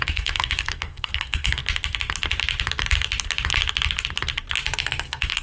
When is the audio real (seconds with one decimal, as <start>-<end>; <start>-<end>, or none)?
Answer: 1.6-4.8

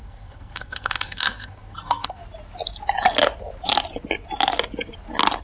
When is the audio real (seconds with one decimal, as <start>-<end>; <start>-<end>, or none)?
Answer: 2.2-5.4

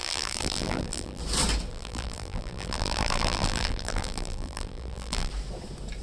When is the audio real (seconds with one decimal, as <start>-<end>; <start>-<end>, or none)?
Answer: 1.2-1.7; 5.3-6.0

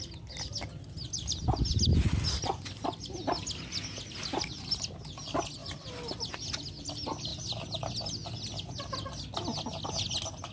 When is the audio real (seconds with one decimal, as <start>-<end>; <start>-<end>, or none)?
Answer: 0.0-7.3; 7.9-10.5

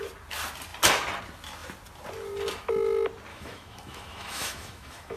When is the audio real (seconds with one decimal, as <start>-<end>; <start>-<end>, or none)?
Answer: 0.0-3.3

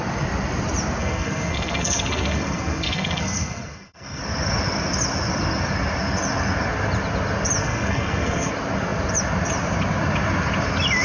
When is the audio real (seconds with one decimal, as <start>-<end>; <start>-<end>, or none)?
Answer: 0.0-1.0; 4.2-7.6; 8.5-11.0

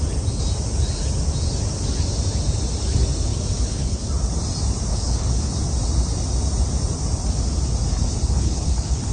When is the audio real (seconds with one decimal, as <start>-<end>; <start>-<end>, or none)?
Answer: 0.0-3.3; 4.0-4.9; 5.5-7.9